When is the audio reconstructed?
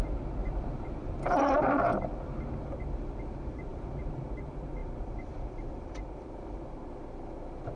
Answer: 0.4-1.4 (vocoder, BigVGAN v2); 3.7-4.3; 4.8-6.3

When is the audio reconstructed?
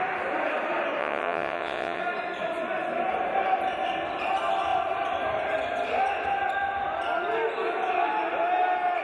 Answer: 1.0-2.0 (vocoder, WaveNeXt)